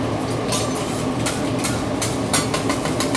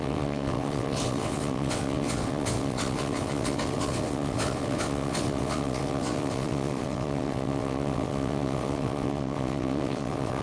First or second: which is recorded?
first